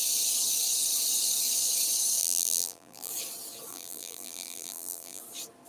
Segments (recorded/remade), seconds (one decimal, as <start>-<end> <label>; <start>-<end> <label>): 0.0-2.2 recorded; 2.2-3.1 remade; 3.1-3.7 recorded; 3.7-5.2 remade; 5.2-5.7 recorded